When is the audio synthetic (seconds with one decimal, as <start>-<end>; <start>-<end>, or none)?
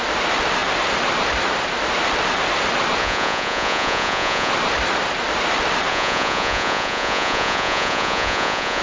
3.0-4.5; 5.9-8.8